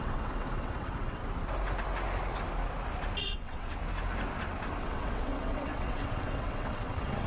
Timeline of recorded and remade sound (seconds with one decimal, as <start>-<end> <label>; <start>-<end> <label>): 0.0-1.2 remade; 1.2-3.2 recorded; 3.2-3.8 remade; 3.8-4.8 recorded; 4.8-7.3 remade